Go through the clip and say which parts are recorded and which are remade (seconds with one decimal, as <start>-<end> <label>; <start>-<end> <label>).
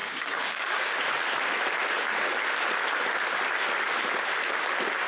0.0-1.0 remade; 1.0-5.1 recorded